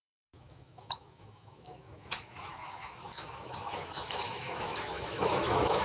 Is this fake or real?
fake